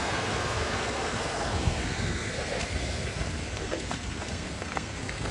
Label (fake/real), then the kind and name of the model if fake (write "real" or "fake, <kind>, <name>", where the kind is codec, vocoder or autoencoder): fake, codec, SNAC